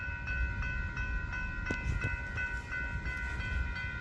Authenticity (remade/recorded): recorded